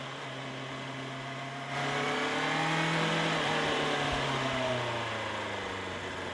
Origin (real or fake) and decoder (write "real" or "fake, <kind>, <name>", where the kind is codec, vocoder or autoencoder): real